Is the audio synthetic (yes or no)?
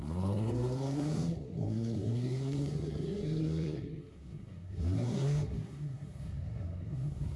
yes